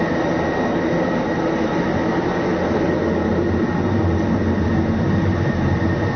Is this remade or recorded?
recorded